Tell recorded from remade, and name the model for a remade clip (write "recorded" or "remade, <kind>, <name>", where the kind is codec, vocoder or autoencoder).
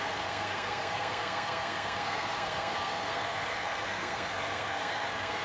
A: remade, codec, SNAC